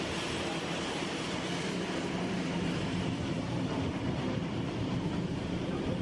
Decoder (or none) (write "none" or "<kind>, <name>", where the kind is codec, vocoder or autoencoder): vocoder, BigVGAN v2